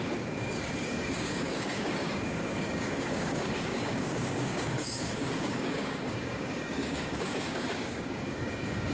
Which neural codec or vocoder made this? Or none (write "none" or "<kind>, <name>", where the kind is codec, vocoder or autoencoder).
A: codec, DAC